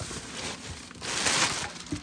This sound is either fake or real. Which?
real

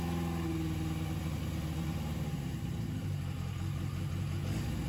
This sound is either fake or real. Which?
real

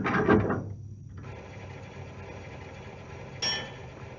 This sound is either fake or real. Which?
real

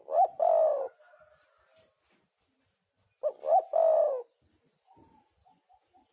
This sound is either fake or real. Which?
real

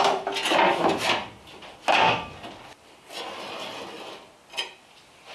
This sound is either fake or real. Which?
real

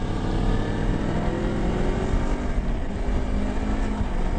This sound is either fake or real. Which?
real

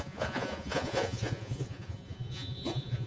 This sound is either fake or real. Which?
fake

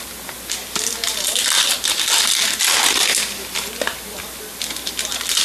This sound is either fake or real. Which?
real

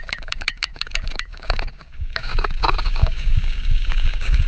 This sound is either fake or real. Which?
fake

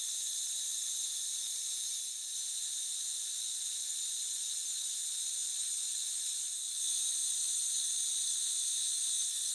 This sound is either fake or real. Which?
real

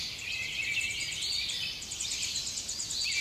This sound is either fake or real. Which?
real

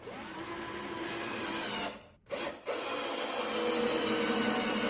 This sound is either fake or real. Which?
real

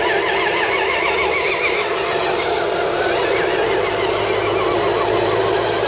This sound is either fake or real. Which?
real